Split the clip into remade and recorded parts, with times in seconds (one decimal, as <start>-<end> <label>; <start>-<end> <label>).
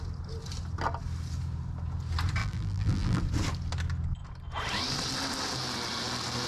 0.0-2.4 recorded; 2.4-3.2 remade; 3.2-6.5 recorded